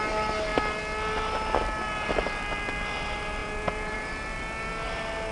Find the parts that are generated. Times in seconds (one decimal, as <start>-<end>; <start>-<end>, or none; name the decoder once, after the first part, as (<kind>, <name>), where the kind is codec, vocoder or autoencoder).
3.4-4.1 (vocoder, Vocos)

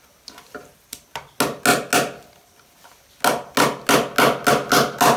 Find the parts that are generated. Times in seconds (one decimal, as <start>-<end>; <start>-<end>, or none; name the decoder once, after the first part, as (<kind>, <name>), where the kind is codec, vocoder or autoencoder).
none

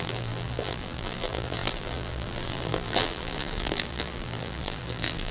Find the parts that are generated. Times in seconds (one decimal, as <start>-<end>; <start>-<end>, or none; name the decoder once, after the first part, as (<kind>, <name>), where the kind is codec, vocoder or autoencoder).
0.0-5.3 (vocoder, BigVGAN v2)

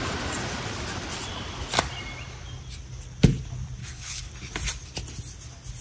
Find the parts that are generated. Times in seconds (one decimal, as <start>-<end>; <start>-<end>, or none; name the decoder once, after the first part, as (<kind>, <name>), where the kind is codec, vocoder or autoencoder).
3.8-4.3 (codec, HILCodec)

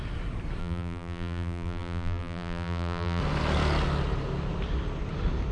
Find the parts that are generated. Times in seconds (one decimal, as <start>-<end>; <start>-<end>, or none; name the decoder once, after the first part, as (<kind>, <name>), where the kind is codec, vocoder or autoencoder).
0.6-3.2 (vocoder, BigVGAN v2)

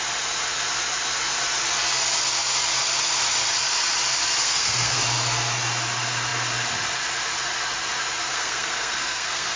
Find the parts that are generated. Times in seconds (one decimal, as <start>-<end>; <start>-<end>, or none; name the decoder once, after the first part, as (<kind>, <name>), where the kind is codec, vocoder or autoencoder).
4.4-5.0 (codec, SNAC); 8.3-9.6

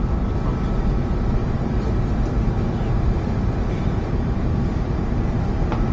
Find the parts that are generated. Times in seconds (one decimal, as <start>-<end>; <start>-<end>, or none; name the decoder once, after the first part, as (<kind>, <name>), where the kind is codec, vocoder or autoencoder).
1.4-4.9 (vocoder, BigVGAN v2)